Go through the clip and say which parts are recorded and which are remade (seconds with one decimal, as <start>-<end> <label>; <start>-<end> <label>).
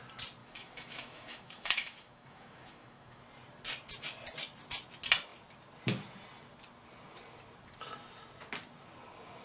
0.0-0.4 recorded; 0.4-3.2 remade; 3.2-9.4 recorded